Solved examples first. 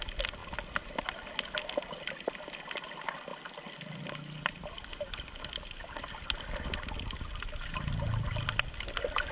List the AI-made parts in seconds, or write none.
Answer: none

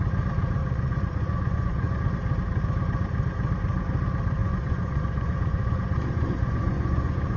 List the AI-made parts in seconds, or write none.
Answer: 0.6-2.0 (vocoder, Vocos); 4.4-7.4

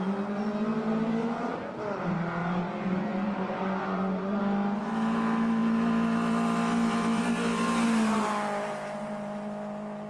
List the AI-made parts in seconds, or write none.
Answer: 1.2-1.7 (vocoder, Vocos); 2.4-4.4

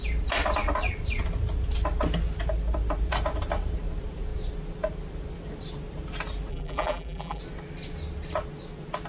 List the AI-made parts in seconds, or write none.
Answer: 6.5-7.4 (vocoder, BigVGAN v2)

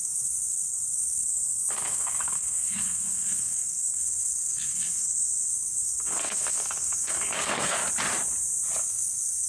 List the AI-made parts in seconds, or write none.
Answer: 0.0-7.8 (codec, SNAC); 8.8-9.5

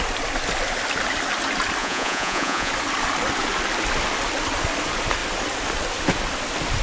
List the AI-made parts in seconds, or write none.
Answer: 1.8-2.7 (vocoder, Vocos)

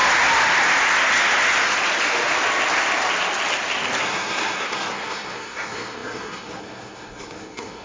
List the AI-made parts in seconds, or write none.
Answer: 4.0-7.8 (codec, SNAC)